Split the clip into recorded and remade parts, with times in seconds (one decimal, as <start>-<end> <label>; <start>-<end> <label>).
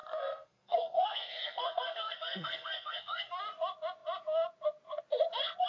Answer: 0.0-3.4 remade; 3.4-5.7 recorded